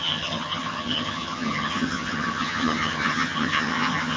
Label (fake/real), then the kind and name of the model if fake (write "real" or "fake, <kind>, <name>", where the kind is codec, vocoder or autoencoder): fake, vocoder, HiFi-GAN